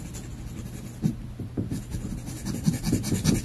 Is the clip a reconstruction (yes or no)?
no